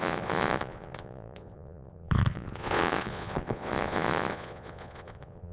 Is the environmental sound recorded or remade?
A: remade